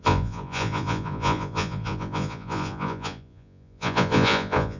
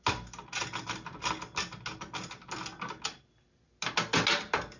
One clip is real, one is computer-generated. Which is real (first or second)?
second